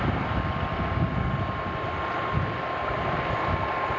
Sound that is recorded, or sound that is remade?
recorded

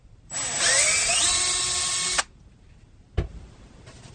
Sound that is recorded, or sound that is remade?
recorded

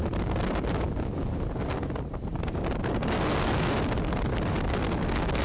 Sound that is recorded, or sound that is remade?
recorded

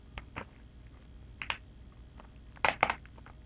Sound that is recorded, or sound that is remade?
recorded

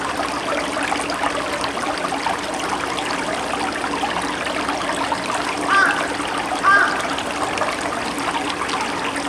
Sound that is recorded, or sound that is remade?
recorded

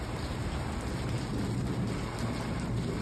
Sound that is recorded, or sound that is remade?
recorded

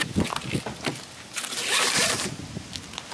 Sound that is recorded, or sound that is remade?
recorded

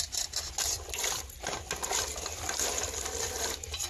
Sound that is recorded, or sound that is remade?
recorded